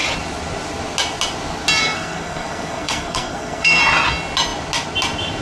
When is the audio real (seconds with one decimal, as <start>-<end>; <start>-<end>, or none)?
0.0-1.8; 3.8-5.4